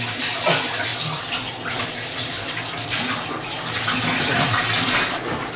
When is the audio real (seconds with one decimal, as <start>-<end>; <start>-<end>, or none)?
0.0-5.6